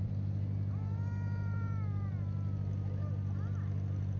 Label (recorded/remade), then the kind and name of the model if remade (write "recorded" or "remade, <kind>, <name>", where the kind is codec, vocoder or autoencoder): recorded